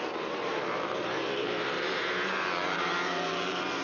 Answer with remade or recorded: remade